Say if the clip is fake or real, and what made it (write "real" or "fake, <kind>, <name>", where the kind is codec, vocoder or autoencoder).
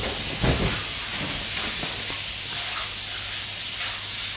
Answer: real